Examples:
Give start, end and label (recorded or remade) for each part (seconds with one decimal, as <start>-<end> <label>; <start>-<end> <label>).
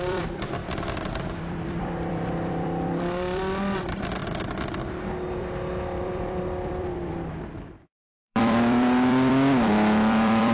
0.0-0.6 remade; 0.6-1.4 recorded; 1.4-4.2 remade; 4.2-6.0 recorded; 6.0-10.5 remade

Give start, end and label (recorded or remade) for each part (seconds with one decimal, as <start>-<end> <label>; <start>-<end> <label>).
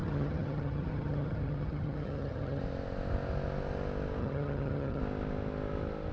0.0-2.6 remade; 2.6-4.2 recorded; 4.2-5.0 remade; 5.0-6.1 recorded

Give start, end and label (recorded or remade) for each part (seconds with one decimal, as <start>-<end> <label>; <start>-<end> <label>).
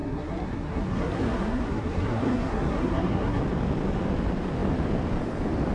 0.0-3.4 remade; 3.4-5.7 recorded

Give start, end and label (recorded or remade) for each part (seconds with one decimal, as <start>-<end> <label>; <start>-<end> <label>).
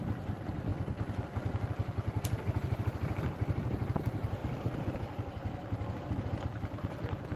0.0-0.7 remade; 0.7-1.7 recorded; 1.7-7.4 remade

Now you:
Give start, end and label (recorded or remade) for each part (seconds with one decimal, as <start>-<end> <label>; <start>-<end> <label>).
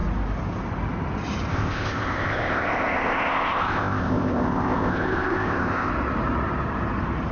0.0-1.5 recorded; 1.5-5.9 remade; 5.9-7.3 recorded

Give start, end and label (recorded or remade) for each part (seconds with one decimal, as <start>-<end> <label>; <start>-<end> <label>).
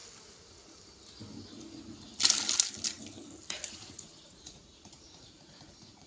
0.0-3.7 recorded; 3.7-6.1 remade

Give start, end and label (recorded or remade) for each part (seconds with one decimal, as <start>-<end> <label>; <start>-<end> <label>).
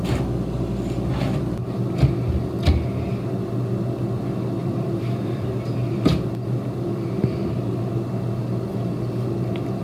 0.0-4.6 recorded; 4.6-7.4 remade; 7.4-9.8 recorded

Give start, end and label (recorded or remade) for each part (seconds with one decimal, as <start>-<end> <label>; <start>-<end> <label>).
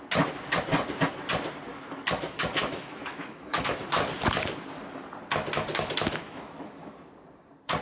0.0-1.7 recorded; 1.7-3.8 remade; 3.8-5.7 recorded; 5.7-7.1 remade; 7.1-7.8 recorded